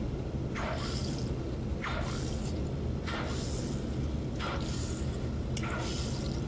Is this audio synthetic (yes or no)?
no